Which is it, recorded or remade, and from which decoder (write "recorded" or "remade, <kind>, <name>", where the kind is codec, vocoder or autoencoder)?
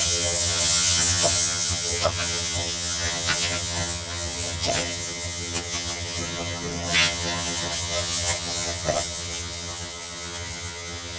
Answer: remade, vocoder, HiFi-GAN